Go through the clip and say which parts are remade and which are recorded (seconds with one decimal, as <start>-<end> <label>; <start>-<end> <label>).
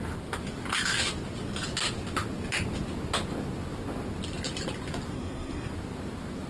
0.0-5.1 recorded; 5.1-5.7 remade; 5.7-6.5 recorded